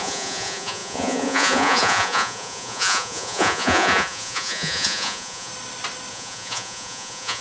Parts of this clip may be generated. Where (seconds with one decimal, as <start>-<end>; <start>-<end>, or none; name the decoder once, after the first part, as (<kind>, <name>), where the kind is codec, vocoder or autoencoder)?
0.0-5.5 (vocoder, Vocos); 6.1-7.4